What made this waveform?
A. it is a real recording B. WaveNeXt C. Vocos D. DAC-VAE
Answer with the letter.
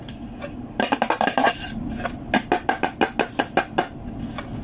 A